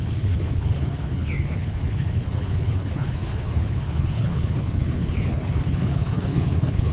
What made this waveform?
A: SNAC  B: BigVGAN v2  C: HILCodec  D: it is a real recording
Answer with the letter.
C